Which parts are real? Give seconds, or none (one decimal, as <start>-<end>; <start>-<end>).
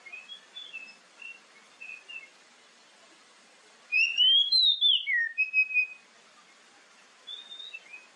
0.0-2.3; 5.4-8.2